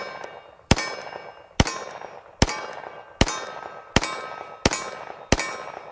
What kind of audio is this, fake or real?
real